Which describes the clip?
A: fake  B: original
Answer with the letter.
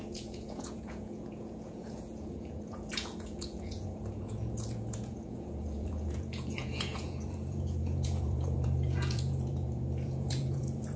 A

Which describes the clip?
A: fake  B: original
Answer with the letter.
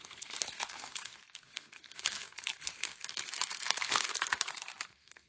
A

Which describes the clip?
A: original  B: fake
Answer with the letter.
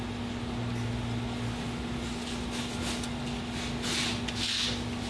A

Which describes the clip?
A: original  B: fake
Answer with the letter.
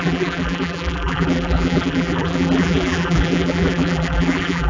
B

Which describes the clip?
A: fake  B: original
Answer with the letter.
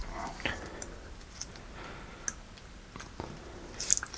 B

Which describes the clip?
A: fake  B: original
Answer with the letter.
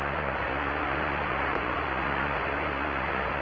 A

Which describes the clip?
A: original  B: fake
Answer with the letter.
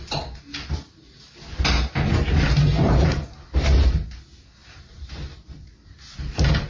A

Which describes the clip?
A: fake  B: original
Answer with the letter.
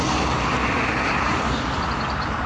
B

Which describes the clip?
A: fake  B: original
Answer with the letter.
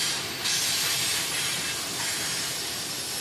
B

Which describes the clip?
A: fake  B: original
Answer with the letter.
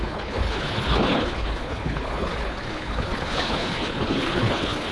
A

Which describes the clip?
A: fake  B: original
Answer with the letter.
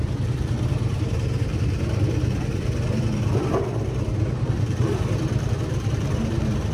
A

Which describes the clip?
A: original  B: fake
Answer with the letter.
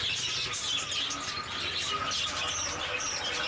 A